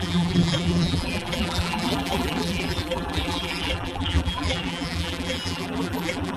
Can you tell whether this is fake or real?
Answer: fake